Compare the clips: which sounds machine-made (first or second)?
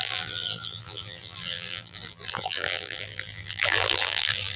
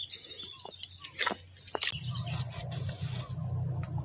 first